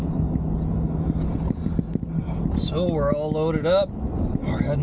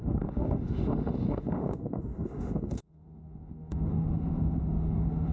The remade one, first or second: second